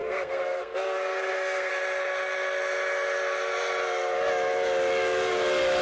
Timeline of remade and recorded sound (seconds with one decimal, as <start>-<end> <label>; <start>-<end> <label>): 0.0-1.7 remade; 1.7-5.8 recorded